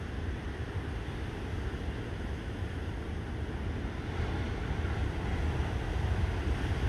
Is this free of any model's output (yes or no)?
yes